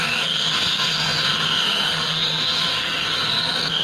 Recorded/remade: remade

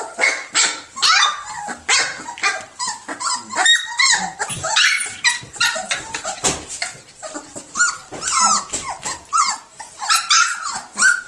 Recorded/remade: recorded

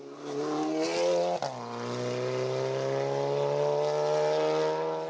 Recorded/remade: recorded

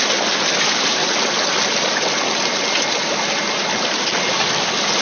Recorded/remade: recorded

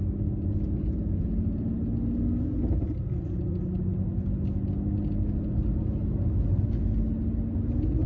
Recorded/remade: recorded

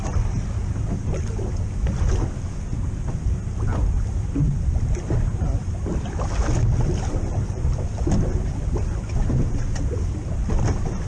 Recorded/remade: recorded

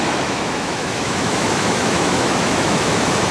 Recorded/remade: remade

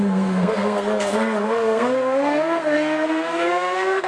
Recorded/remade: remade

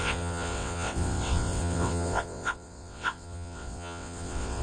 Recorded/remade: remade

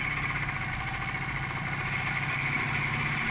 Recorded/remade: recorded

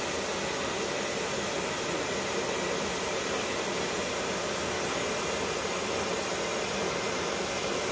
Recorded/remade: recorded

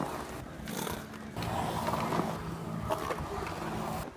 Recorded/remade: recorded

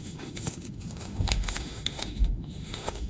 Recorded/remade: remade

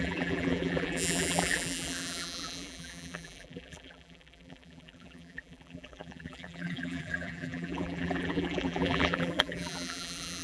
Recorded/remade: remade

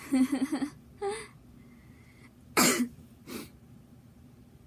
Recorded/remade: recorded